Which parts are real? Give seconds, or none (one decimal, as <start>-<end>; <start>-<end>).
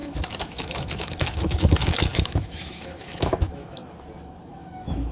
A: 3.8-4.4